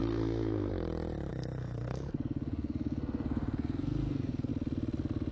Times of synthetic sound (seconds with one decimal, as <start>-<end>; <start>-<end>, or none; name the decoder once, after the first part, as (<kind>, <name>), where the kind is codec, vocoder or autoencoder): 0.0-0.7 (codec, SNAC); 1.3-4.5